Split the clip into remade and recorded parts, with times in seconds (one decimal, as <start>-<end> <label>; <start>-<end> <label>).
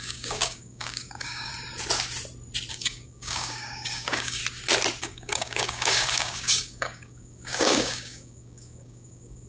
0.0-1.5 remade; 1.5-2.7 recorded; 2.7-4.4 remade; 4.4-5.0 recorded; 5.0-9.5 remade